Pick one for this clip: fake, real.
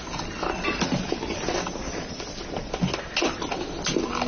real